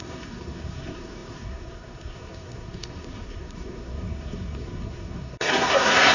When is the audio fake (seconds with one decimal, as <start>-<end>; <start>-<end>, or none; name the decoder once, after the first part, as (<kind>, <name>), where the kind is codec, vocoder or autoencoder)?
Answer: 0.0-6.1 (codec, SNAC)

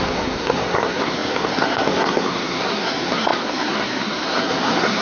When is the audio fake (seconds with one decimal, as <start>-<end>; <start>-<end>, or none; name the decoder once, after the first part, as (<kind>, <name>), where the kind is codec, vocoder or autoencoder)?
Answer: 0.0-5.0 (codec, SNAC)

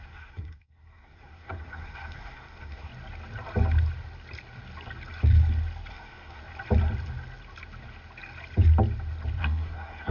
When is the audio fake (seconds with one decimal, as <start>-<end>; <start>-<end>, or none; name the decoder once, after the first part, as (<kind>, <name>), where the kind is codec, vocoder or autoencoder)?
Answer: 0.0-2.9 (codec, SNAC); 5.9-6.4; 9.4-10.1